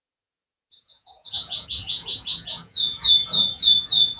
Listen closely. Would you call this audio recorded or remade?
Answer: remade